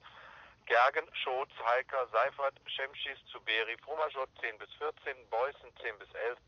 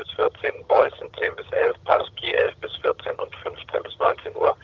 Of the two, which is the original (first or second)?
first